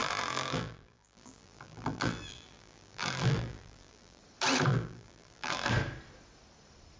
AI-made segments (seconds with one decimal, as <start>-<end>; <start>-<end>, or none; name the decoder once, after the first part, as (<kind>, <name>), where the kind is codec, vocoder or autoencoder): 0.0-4.2 (vocoder, BigVGAN v2); 4.7-5.7